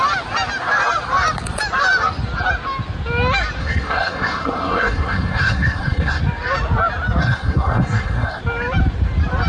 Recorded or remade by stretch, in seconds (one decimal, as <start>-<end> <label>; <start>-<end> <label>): 0.0-3.6 recorded; 3.6-6.2 remade; 6.2-7.2 recorded; 7.2-8.4 remade; 8.4-9.5 recorded